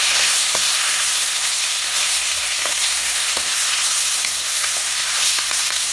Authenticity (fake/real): fake